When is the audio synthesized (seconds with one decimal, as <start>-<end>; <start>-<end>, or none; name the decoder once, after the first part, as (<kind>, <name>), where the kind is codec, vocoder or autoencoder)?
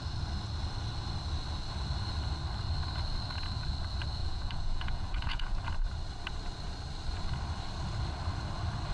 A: 4.2-5.6 (vocoder, Vocos)